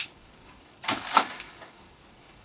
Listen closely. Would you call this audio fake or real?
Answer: fake